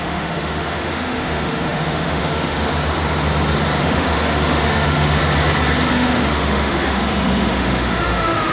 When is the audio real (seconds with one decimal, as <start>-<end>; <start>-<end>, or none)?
2.7-3.8; 5.2-5.9